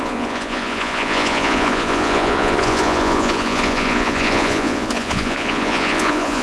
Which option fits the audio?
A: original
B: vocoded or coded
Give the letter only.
B